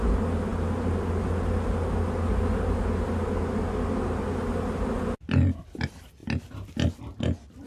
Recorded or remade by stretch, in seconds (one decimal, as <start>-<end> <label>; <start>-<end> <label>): 0.0-7.7 recorded